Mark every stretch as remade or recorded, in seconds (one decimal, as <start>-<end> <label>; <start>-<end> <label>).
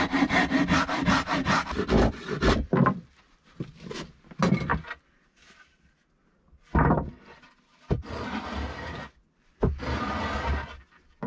0.0-11.3 recorded